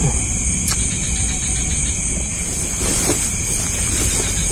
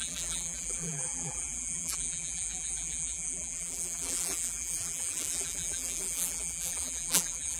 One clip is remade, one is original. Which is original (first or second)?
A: first